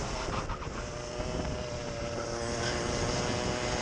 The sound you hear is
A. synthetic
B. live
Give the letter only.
B